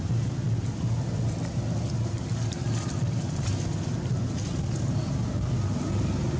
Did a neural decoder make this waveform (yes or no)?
no